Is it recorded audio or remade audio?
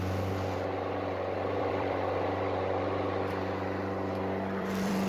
remade